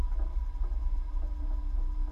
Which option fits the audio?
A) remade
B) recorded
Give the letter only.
B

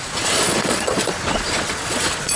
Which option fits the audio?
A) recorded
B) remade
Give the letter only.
B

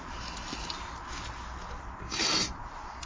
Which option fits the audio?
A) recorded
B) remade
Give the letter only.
A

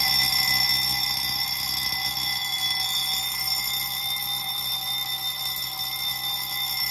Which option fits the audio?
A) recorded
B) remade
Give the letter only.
A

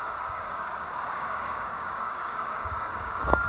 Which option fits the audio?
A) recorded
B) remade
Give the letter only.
B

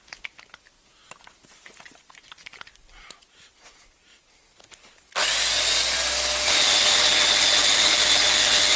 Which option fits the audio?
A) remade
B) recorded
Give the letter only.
B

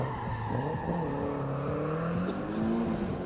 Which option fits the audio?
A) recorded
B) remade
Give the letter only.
A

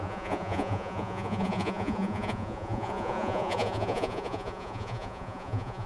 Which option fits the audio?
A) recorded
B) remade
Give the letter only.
B